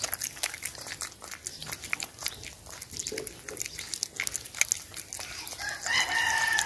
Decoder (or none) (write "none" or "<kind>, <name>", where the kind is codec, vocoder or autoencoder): none